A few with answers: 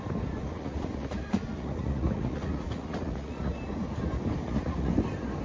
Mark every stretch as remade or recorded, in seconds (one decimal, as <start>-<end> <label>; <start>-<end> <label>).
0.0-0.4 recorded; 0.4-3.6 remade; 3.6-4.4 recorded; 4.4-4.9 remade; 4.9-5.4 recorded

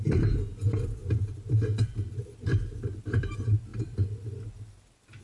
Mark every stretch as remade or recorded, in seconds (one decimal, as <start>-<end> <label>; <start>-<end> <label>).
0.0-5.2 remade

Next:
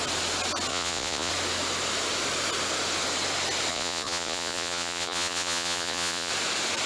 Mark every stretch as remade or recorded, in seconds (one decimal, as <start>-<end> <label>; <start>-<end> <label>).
0.0-0.7 recorded; 0.7-1.3 remade; 1.3-3.7 recorded; 3.7-6.3 remade; 6.3-6.9 recorded

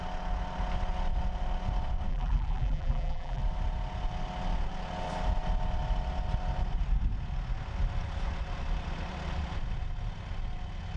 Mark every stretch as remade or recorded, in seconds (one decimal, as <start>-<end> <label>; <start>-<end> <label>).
0.0-2.1 recorded; 2.1-3.4 remade; 3.4-11.0 recorded

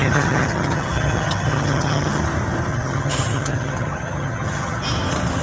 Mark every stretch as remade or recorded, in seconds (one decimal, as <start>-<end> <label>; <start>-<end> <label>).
0.0-2.2 remade; 2.2-2.7 recorded; 2.7-4.8 remade; 4.8-5.4 recorded

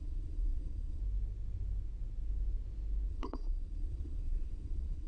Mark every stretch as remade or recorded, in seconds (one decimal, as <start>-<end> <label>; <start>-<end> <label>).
0.0-1.0 remade; 1.0-3.1 recorded; 3.1-5.1 remade

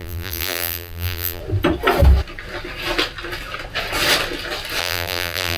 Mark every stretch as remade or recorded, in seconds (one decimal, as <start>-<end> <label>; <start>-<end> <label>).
0.0-1.4 remade; 1.4-4.8 recorded; 4.8-5.6 remade